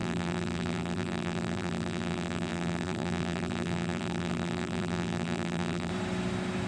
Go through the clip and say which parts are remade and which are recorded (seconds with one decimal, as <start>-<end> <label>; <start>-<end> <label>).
0.0-5.9 remade; 5.9-6.7 recorded